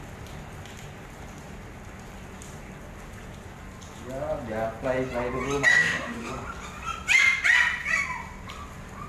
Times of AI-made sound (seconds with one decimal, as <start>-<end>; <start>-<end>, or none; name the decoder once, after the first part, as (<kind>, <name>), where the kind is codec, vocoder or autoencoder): 5.7-6.3 (autoencoder, DAC-VAE)